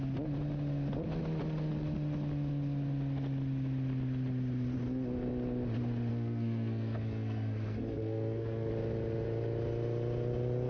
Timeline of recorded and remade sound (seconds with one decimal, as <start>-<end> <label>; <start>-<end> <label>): 0.0-6.1 recorded; 6.1-8.7 remade; 8.7-10.7 recorded